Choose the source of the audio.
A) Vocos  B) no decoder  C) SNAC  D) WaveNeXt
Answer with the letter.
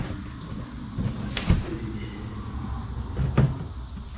B